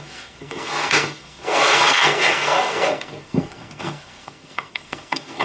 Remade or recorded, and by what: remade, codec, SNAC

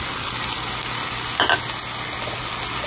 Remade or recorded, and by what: recorded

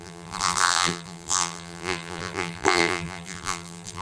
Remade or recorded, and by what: remade, vocoder, BigVGAN v2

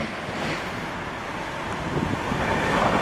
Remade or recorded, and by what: recorded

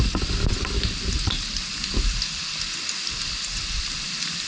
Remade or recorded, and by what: recorded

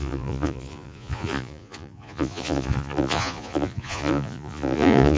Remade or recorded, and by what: remade, vocoder, Vocos